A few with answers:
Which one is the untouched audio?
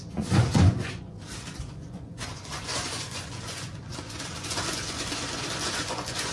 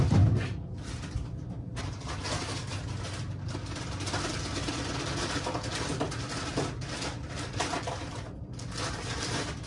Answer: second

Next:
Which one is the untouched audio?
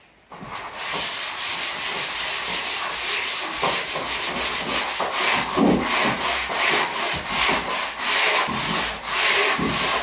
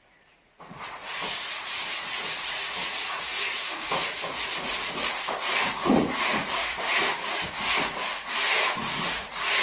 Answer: first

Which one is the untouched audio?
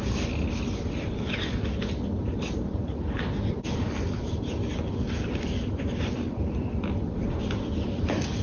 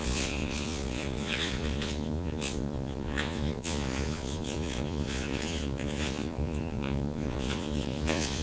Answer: first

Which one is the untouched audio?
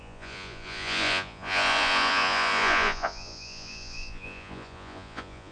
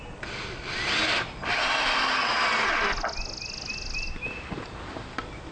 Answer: second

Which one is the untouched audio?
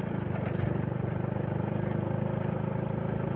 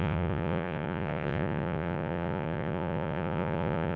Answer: first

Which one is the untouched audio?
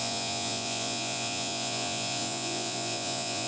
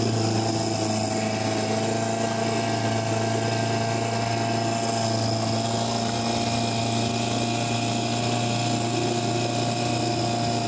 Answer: second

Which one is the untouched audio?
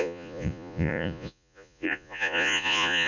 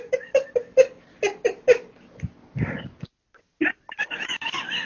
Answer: second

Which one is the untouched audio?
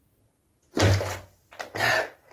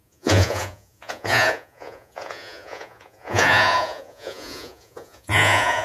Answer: first